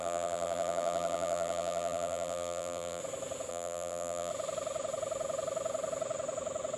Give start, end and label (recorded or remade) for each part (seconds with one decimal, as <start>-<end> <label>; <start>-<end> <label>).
0.0-3.0 remade; 3.0-3.5 recorded; 3.5-4.3 remade; 4.3-6.8 recorded